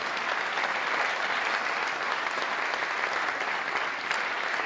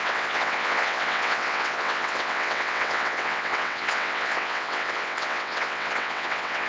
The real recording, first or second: first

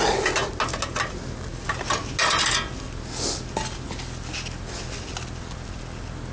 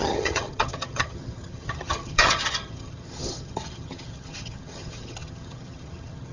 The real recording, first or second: first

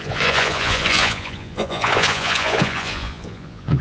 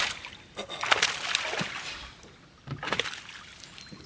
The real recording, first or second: second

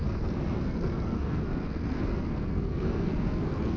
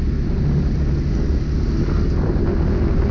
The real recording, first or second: second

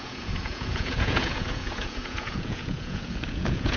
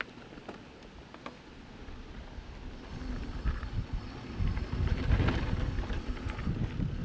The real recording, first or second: second